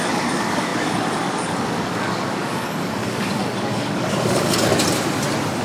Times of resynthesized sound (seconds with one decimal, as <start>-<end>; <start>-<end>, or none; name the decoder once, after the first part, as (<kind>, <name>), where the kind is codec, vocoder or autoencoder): 0.0-4.7 (codec, DAC)